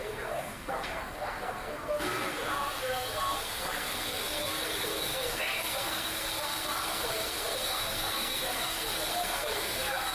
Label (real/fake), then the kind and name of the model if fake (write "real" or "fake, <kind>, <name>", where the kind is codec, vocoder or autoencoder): fake, codec, SNAC